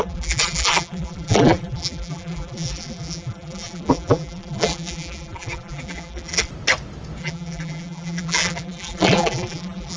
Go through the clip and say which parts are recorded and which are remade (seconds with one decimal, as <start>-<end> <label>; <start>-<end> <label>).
0.0-6.5 remade; 6.5-7.2 recorded; 7.2-10.0 remade